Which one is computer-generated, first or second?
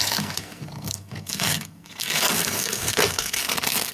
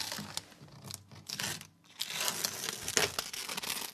first